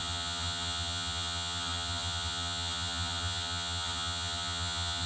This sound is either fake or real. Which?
fake